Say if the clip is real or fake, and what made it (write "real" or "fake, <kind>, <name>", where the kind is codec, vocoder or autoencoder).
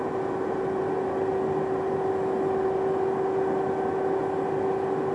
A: real